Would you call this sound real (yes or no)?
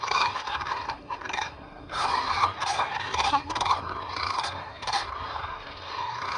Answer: no